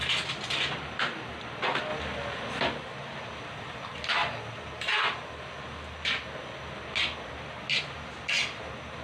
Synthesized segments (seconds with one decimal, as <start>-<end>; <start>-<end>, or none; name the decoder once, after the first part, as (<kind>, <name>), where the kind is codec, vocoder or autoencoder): none